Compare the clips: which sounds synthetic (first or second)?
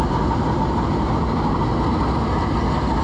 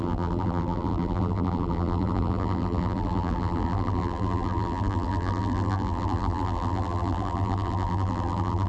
second